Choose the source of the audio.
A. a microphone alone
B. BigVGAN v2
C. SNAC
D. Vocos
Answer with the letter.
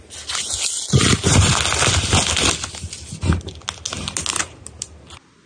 A